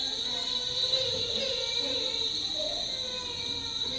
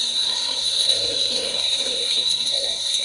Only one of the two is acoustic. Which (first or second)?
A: first